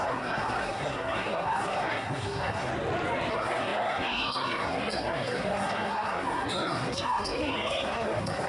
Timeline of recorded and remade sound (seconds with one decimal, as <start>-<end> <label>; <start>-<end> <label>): 0.0-2.7 remade; 2.7-3.3 recorded; 3.3-8.5 remade